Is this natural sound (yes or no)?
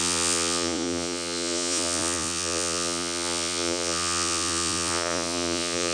no